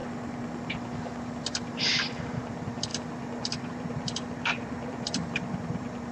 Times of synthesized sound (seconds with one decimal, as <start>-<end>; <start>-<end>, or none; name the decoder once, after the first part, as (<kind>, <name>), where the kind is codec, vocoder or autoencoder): 1.8-2.9 (vocoder, BigVGAN v2); 3.6-6.1